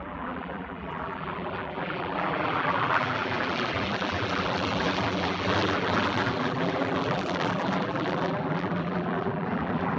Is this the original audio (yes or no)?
no